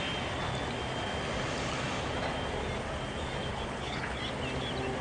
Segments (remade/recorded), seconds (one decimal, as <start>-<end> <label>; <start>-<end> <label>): 0.0-3.5 recorded; 3.5-4.2 remade; 4.2-5.0 recorded